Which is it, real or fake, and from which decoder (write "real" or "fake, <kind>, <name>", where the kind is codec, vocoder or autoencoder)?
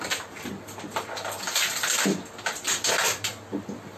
real